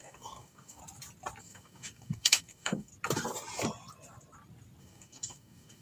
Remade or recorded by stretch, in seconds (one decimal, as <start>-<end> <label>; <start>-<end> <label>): 0.0-0.8 remade; 0.8-1.4 recorded; 1.4-2.9 remade; 2.9-4.8 recorded; 4.8-5.8 remade